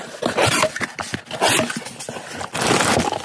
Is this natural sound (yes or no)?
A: yes